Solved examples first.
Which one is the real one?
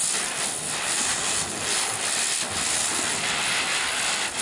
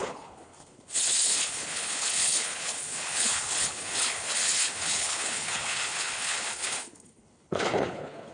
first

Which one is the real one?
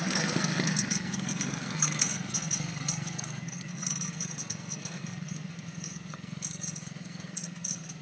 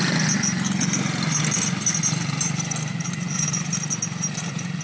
second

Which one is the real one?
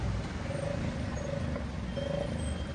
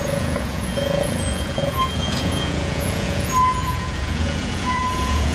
first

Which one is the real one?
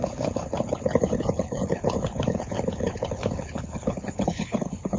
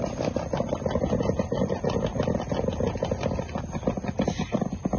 second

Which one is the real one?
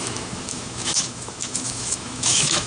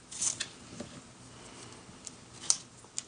second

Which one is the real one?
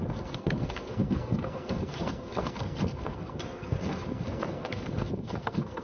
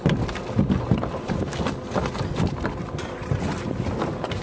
second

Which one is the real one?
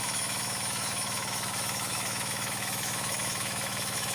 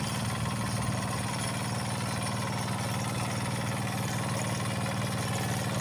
second